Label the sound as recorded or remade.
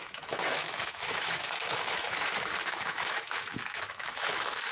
remade